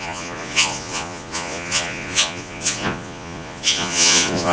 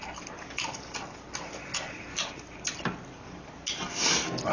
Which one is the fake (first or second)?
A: first